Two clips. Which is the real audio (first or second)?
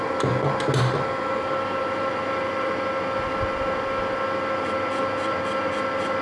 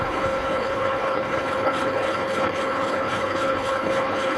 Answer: first